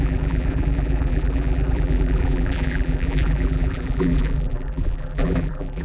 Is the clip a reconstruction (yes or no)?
yes